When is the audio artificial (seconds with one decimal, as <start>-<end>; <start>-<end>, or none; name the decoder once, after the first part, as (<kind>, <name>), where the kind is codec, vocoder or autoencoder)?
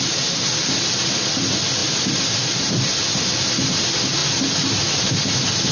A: none